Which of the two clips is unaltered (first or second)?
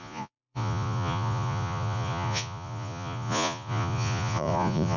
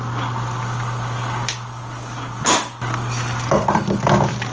second